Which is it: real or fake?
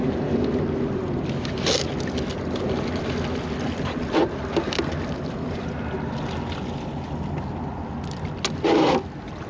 real